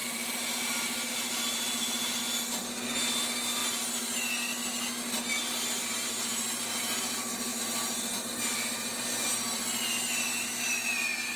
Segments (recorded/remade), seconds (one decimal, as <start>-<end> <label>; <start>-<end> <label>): 0.0-2.2 remade; 2.2-11.4 recorded